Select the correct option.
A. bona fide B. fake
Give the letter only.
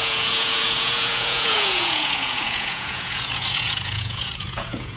B